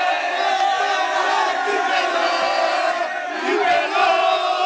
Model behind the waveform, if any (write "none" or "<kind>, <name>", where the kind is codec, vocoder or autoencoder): none